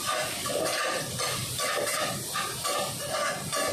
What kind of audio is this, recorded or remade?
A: recorded